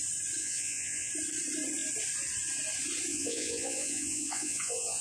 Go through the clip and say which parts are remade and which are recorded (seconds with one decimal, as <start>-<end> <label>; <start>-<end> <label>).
0.0-0.4 recorded; 0.4-1.1 remade; 1.1-3.1 recorded; 3.1-5.0 remade